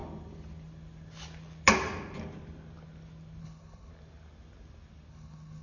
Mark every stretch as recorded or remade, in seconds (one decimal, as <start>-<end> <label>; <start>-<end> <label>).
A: 0.0-3.4 recorded; 3.4-3.9 remade; 3.9-5.1 recorded; 5.1-5.6 remade